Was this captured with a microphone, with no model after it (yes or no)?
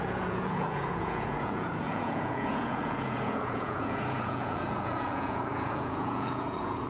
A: no